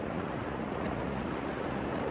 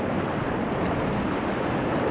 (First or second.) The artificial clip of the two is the first